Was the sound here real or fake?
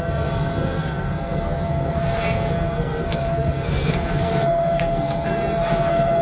fake